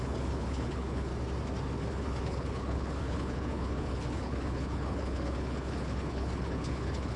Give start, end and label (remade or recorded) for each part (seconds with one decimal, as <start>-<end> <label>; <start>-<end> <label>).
0.0-1.1 remade; 1.1-1.9 recorded; 1.9-7.2 remade